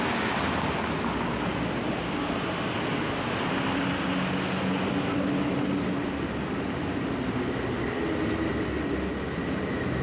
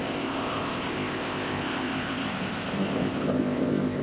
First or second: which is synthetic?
second